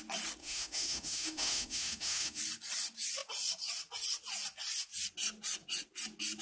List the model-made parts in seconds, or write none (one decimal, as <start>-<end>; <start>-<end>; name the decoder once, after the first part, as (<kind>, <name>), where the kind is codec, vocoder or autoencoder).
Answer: 0.4-2.4 (autoencoder, DAC-VAE)